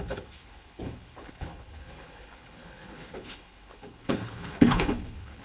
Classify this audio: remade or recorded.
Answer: remade